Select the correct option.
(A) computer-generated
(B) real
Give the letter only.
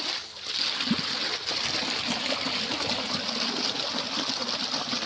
B